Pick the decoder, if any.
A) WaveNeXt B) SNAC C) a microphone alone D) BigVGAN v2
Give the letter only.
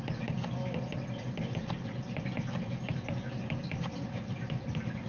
C